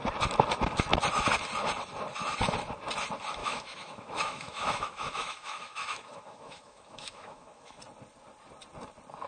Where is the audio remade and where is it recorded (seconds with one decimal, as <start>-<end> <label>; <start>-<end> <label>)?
0.0-3.4 recorded; 3.4-7.8 remade; 7.8-9.3 recorded